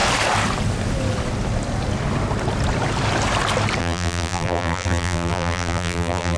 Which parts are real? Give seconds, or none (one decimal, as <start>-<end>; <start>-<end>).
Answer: 0.0-3.8